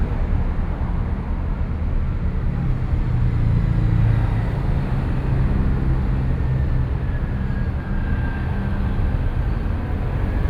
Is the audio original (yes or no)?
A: yes